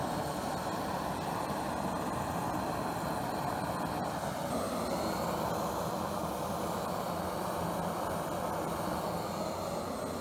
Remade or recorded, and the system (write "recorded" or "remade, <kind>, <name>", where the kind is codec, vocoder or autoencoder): recorded